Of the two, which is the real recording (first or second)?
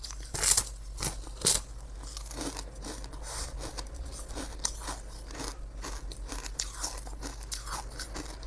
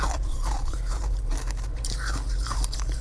first